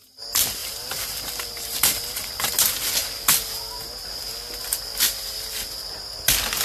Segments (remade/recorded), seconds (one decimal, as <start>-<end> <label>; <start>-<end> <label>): 0.0-0.6 recorded; 0.6-2.5 remade; 2.5-6.6 recorded